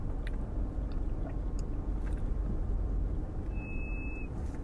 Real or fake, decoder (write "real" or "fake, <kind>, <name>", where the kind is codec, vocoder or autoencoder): real